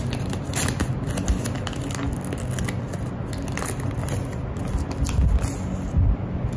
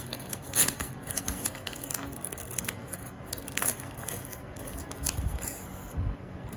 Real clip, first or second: first